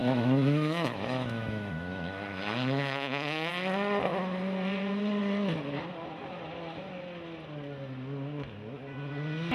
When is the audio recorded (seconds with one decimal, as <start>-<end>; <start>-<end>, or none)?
3.5-9.5